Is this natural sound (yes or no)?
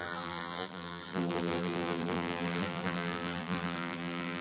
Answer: no